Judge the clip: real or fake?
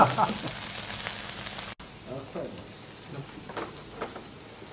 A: real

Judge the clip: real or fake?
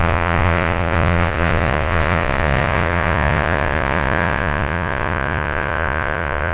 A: fake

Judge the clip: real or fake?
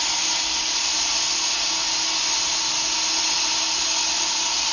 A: real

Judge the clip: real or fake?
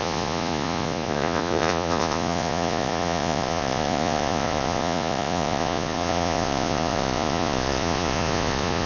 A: fake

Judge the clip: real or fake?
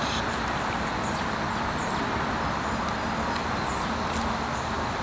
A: real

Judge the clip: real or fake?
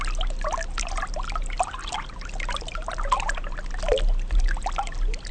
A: real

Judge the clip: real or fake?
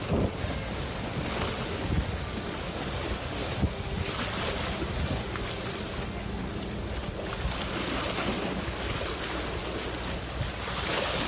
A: real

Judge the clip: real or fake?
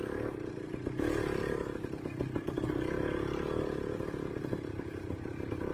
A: real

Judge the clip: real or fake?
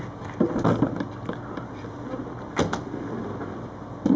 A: real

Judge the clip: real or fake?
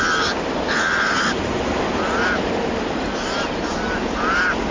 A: real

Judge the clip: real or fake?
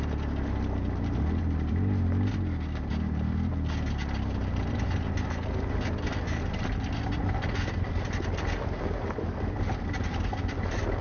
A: real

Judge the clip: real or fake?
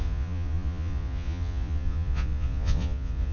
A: fake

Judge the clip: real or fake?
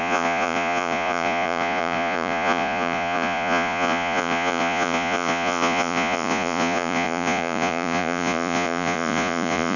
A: fake